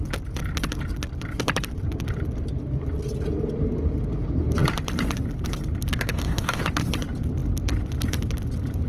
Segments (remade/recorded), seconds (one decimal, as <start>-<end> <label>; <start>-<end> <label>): 0.0-5.9 recorded; 5.9-6.6 remade; 6.6-8.9 recorded